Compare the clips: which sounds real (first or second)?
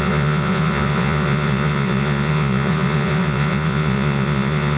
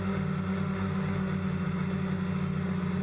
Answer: second